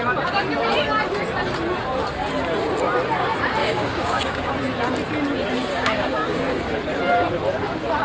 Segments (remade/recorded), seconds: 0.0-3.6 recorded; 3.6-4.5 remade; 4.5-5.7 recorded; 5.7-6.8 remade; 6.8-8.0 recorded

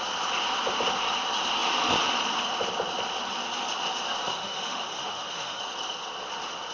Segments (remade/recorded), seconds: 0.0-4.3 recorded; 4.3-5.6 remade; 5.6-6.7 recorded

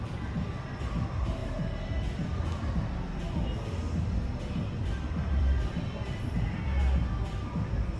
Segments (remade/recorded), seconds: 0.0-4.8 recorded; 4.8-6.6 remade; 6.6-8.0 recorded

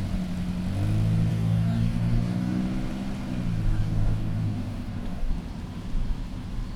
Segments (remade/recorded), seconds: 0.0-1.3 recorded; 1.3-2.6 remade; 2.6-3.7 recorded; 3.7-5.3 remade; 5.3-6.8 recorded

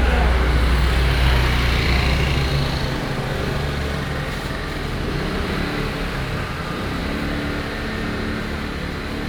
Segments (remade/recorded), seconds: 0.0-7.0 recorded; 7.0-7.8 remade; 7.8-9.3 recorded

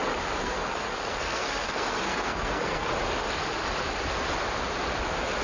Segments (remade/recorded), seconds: 0.0-0.4 recorded; 0.4-2.9 remade; 2.9-5.4 recorded